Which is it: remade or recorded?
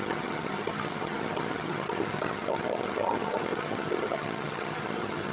remade